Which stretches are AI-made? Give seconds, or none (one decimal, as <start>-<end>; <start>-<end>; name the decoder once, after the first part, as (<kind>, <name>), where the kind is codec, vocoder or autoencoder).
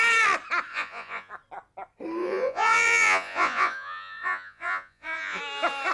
0.7-1.3 (vocoder, Vocos); 2.2-5.4